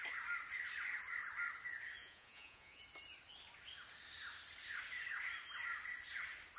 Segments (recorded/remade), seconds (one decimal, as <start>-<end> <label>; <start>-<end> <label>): 0.0-2.0 recorded; 2.0-2.8 remade; 2.8-6.6 recorded